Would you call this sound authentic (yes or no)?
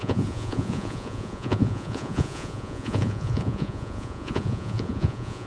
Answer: no